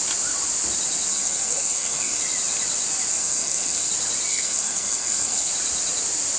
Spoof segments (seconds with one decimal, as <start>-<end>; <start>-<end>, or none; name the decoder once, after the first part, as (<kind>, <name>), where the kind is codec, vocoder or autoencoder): 1.1-2.2 (codec, SNAC); 3.1-3.9; 4.3-5.5